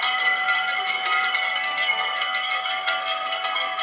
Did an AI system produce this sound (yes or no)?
yes